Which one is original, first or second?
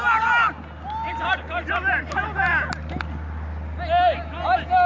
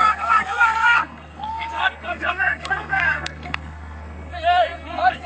first